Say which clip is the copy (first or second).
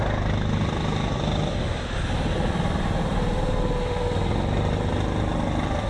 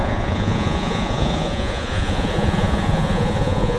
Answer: second